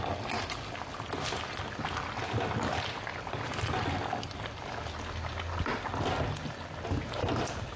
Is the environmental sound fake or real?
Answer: real